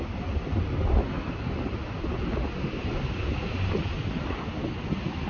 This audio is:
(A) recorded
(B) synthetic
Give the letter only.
A